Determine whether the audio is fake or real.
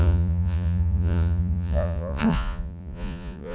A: fake